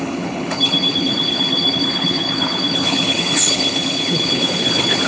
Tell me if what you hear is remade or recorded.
remade